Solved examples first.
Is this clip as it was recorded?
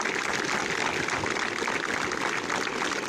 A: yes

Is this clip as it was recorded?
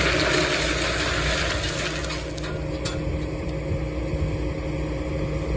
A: yes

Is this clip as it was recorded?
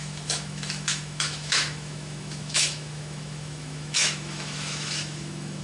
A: no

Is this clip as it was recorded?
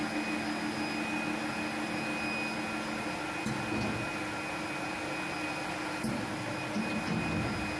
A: yes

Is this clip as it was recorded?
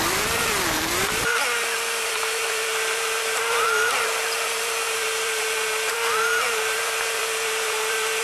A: no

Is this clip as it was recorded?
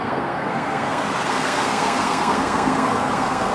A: no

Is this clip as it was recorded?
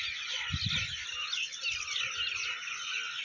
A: yes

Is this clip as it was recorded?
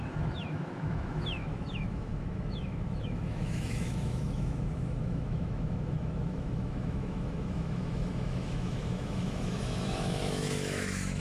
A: no